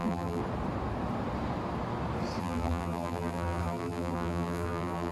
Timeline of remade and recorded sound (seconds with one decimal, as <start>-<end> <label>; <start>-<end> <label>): 0.0-0.4 remade; 0.4-2.4 recorded; 2.4-5.1 remade